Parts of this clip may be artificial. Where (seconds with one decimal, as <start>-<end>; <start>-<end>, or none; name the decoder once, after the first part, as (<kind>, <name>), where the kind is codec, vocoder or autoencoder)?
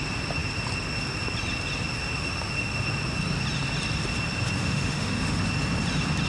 2.0-2.8 (autoencoder, DAC-VAE); 4.6-5.4